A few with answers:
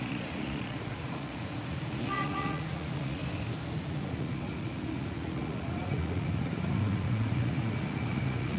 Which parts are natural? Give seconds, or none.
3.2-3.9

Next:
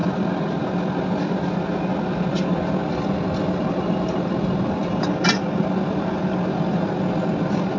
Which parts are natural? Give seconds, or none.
0.0-7.8

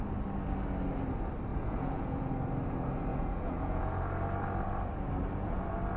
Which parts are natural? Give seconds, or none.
0.0-1.5; 2.3-3.1; 4.1-6.0

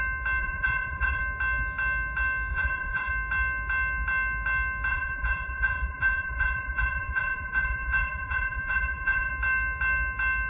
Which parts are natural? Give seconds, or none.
0.0-0.4; 1.2-2.5; 3.1-4.9; 9.3-10.5

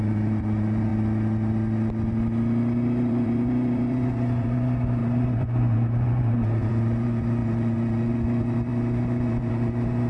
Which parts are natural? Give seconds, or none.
0.9-3.1

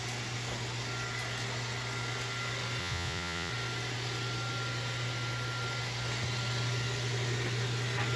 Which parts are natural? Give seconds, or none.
0.0-2.8; 3.5-8.2

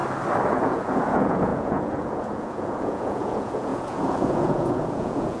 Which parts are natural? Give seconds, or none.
0.0-0.5